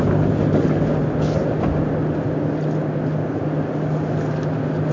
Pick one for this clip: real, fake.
real